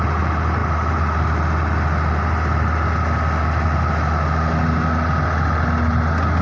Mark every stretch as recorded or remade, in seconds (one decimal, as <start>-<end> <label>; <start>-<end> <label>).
0.0-6.4 recorded